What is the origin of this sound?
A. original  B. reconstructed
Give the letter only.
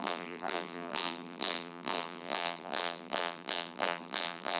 B